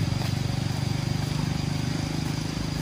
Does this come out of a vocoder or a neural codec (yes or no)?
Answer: no